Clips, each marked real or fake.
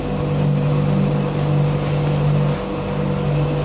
real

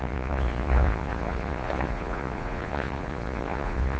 fake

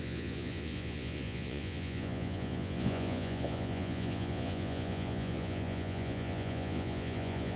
fake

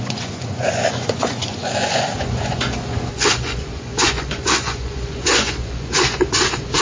fake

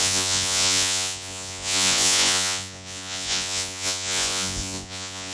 fake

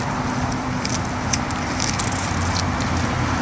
real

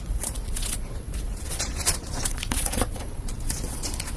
fake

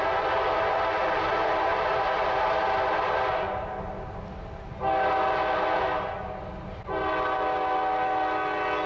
real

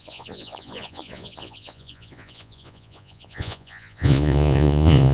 fake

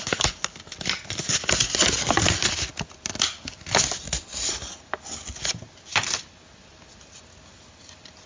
real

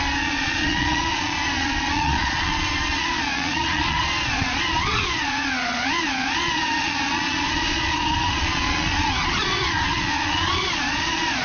fake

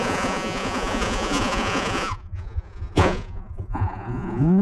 fake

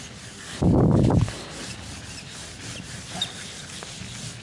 real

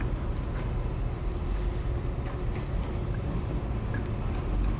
real